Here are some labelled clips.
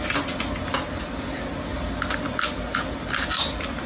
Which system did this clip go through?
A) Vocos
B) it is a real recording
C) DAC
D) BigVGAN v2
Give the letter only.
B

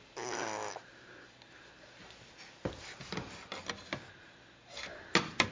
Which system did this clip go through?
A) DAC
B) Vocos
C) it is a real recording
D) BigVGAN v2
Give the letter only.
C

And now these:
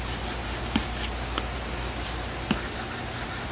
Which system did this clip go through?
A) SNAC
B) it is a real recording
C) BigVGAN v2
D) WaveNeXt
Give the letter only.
B